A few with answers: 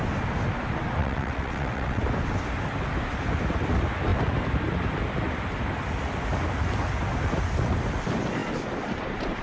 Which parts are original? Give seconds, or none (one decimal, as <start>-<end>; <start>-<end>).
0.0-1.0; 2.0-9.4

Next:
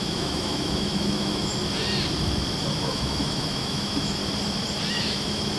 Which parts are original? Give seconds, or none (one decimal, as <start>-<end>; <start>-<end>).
1.5-2.9; 4.2-4.9

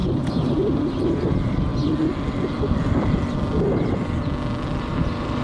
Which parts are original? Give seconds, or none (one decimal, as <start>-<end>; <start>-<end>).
1.7-4.8